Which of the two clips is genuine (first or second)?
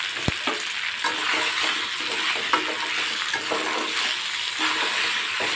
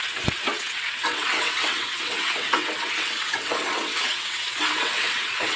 first